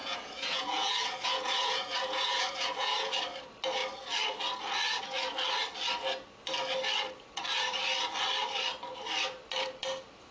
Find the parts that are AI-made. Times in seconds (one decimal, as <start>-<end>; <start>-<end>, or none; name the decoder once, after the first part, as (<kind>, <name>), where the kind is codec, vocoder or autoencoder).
0.0-3.2 (vocoder, Vocos)